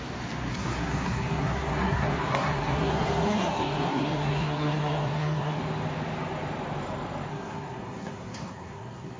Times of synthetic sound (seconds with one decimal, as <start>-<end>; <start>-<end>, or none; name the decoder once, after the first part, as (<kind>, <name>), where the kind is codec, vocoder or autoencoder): 0.5-5.6 (codec, SNAC); 7.3-9.2